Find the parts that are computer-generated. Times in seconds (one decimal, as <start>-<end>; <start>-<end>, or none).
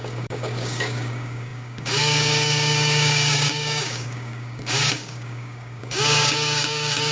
0.0-7.1